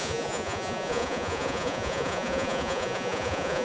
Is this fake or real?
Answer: fake